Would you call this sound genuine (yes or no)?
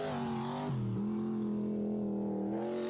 yes